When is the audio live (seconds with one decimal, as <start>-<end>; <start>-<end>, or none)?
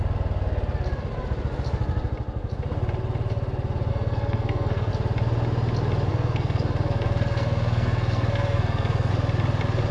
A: 0.0-3.9; 4.9-6.1; 9.1-9.9